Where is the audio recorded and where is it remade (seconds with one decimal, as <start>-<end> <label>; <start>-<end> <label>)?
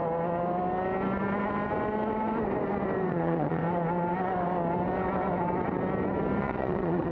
0.0-3.1 recorded; 3.1-3.6 remade; 3.6-6.4 recorded; 6.4-7.1 remade